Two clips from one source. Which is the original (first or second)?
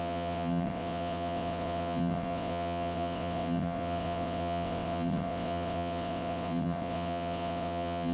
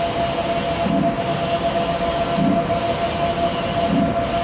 second